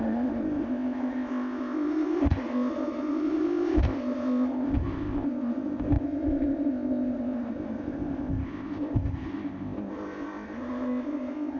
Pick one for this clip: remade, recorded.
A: remade